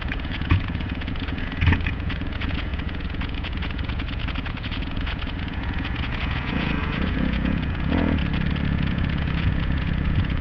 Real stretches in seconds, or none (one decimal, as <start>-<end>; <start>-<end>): 8.2-8.7